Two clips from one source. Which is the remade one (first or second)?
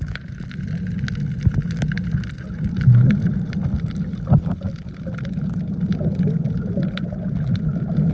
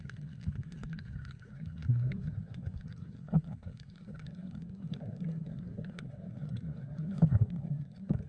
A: second